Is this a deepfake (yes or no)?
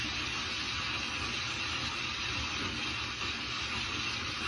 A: no